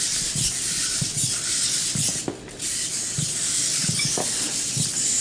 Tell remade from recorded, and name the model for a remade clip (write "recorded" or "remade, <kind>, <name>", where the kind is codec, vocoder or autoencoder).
recorded